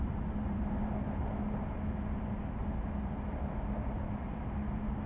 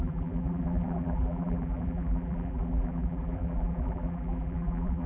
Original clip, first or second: first